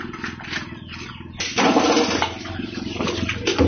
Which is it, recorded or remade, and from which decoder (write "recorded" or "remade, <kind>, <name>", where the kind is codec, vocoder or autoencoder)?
recorded